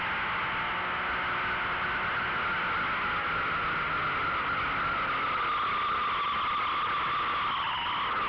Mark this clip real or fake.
real